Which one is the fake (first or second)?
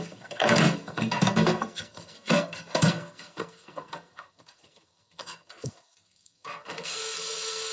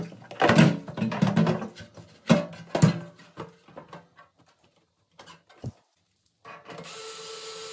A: first